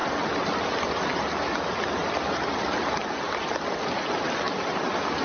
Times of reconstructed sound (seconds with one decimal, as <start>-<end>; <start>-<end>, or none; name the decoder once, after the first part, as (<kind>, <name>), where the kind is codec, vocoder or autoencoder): none